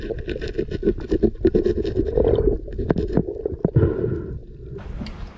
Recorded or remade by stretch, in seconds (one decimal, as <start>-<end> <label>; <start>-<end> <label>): 0.0-5.4 recorded